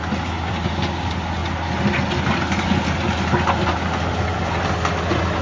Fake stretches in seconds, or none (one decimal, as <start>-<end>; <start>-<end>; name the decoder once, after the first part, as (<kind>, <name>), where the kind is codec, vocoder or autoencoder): none